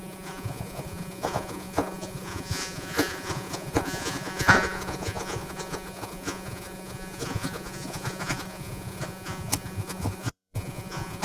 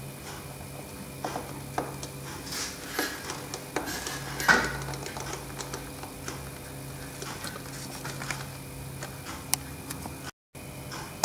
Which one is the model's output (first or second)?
first